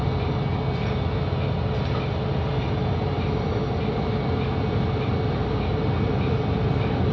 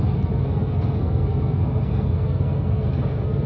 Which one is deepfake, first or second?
second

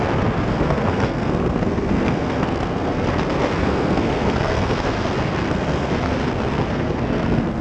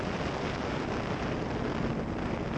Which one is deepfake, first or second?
first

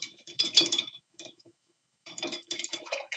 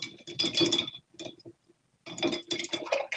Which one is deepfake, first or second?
first